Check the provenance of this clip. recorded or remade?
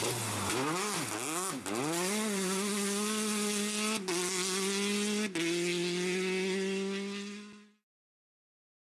recorded